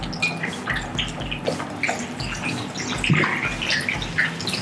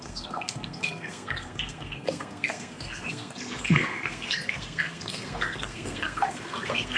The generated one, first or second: second